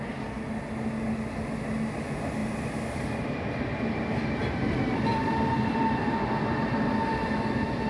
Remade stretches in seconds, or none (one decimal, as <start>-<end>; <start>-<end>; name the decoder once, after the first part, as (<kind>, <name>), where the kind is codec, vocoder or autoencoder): 2.4-4.4 (vocoder, BigVGAN v2); 5.1-6.2